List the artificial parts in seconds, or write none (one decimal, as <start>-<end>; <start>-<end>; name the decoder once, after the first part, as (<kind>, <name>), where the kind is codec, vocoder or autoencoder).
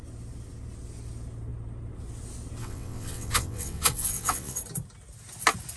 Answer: 2.6-4.6 (vocoder, WaveNeXt)